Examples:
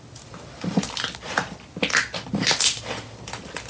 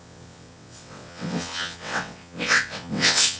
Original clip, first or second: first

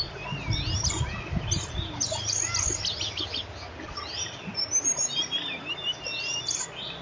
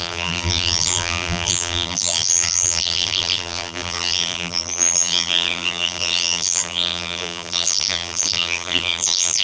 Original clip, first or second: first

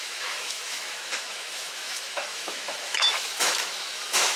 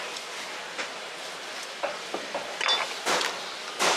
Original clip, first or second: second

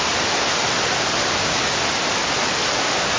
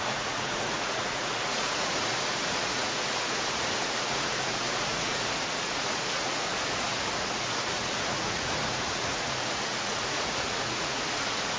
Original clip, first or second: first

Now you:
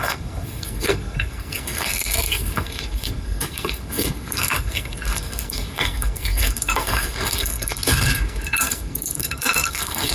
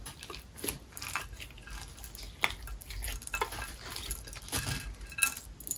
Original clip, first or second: second